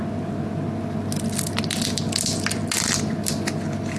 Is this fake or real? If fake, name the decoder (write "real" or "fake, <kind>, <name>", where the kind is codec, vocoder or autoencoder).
real